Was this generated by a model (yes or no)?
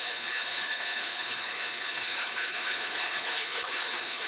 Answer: yes